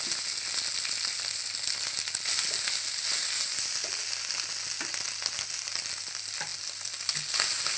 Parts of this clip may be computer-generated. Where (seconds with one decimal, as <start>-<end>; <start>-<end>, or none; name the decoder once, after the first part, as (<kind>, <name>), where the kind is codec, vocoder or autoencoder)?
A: none